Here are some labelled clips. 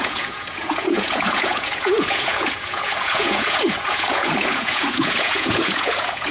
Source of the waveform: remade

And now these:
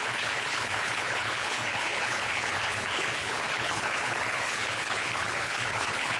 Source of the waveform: remade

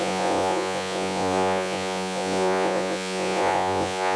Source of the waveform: remade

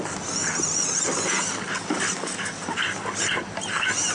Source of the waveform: recorded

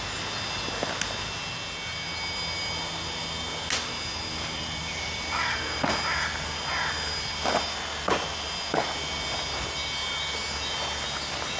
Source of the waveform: recorded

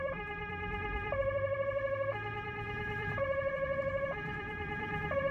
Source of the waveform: remade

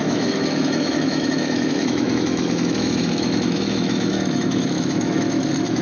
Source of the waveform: remade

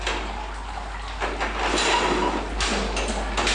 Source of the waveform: recorded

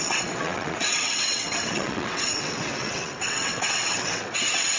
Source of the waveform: remade